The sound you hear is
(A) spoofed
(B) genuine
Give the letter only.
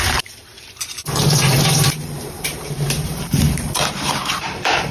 A